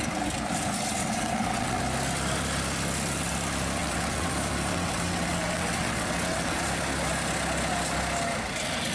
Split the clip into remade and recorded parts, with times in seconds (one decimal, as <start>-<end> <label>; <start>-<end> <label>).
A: 0.0-1.0 recorded; 1.0-1.8 remade; 1.8-3.8 recorded; 3.8-4.3 remade; 4.3-4.7 recorded; 4.7-6.6 remade; 6.6-8.9 recorded